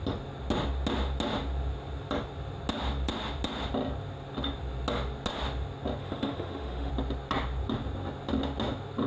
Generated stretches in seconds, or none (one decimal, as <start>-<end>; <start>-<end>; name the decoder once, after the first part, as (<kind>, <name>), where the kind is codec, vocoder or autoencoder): 6.0-6.9 (autoencoder, DAC-VAE)